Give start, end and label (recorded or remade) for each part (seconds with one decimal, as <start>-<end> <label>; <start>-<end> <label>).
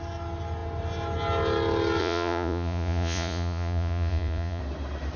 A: 0.0-2.0 recorded; 2.0-4.6 remade; 4.6-5.2 recorded